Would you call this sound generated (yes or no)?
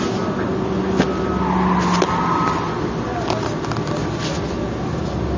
no